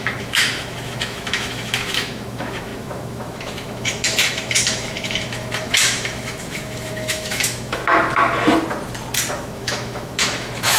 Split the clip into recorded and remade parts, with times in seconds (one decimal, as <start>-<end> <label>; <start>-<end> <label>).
0.0-7.8 remade; 7.8-9.3 recorded; 9.3-10.8 remade